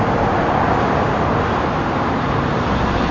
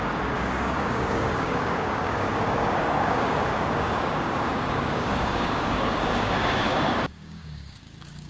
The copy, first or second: second